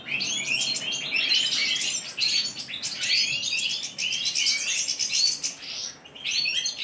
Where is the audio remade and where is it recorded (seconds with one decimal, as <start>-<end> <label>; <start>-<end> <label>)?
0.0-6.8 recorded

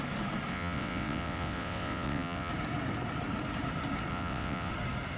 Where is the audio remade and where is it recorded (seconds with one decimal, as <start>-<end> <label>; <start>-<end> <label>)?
0.0-0.5 recorded; 0.5-2.5 remade; 2.5-4.1 recorded; 4.1-4.7 remade; 4.7-5.2 recorded

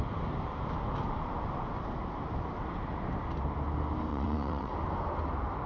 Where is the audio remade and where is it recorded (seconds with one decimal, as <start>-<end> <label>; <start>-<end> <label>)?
0.0-4.1 recorded; 4.1-4.7 remade; 4.7-5.7 recorded

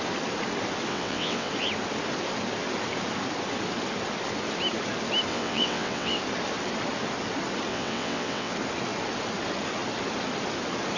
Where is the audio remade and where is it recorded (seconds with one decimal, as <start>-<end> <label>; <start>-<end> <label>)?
0.0-0.9 recorded; 0.9-1.5 remade; 1.5-5.3 recorded; 5.3-6.2 remade; 6.2-7.7 recorded; 7.7-8.5 remade; 8.5-11.0 recorded

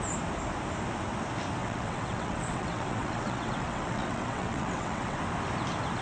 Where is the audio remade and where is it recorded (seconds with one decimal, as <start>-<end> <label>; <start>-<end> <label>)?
0.0-1.6 recorded; 1.6-5.2 remade; 5.2-6.0 recorded

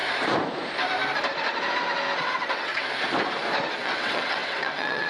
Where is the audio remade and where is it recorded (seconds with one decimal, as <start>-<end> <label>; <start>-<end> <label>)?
0.0-2.2 recorded; 2.2-2.7 remade; 2.7-3.8 recorded; 3.8-5.1 remade